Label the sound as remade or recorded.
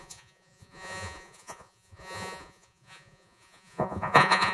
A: remade